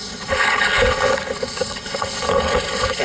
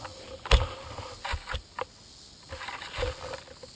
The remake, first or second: first